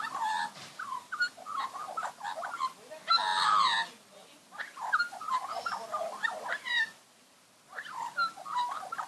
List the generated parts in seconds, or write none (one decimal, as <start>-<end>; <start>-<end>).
none